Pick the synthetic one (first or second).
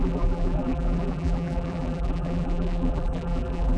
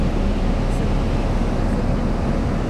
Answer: first